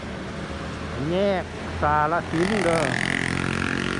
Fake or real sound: real